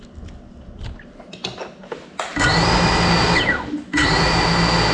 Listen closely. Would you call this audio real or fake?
real